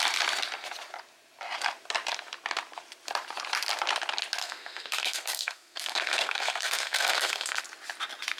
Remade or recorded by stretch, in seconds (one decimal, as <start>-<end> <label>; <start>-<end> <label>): 0.0-4.4 recorded; 4.4-7.6 remade; 7.6-8.4 recorded